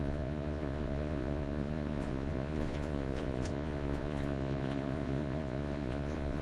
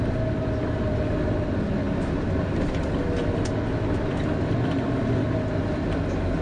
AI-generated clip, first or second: first